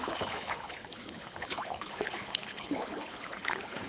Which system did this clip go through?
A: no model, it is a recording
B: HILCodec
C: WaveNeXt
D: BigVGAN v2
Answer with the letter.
B